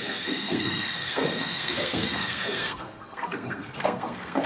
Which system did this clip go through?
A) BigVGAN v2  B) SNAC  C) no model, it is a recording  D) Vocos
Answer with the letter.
B